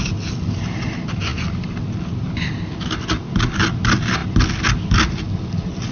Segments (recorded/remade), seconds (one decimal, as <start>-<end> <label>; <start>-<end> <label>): 0.0-5.9 recorded

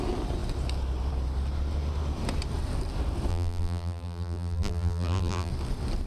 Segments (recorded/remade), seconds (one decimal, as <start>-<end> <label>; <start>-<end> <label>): 0.0-3.3 recorded; 3.3-5.5 remade; 5.5-6.1 recorded

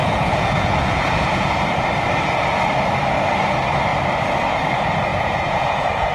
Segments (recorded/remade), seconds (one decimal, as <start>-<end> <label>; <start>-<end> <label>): 0.0-1.5 remade; 1.5-5.1 recorded; 5.1-6.1 remade

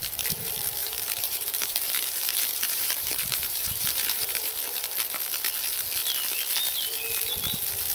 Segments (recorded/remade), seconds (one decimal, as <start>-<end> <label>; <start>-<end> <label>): 0.0-0.8 recorded; 0.8-4.5 remade; 4.5-7.9 recorded

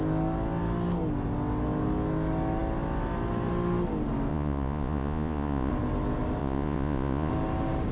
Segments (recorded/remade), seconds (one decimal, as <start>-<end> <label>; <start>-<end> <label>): 0.0-4.3 recorded; 4.3-5.7 remade; 5.7-6.4 recorded; 6.4-7.3 remade; 7.3-7.9 recorded

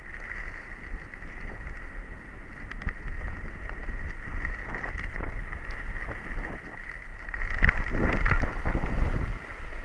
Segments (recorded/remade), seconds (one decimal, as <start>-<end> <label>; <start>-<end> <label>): 0.0-9.8 recorded